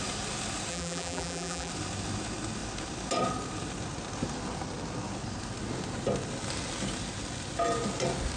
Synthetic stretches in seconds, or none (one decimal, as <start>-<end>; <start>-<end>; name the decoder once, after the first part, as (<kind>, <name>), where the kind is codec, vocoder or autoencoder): 0.7-1.7 (vocoder, BigVGAN v2)